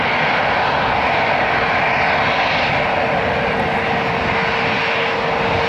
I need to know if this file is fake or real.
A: real